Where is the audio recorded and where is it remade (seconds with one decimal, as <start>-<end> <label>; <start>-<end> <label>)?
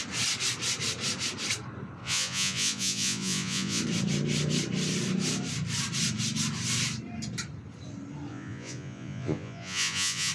0.0-2.0 recorded; 2.0-3.8 remade; 3.8-8.3 recorded; 8.3-10.3 remade